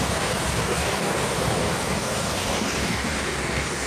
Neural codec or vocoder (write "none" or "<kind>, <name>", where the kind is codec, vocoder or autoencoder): codec, DAC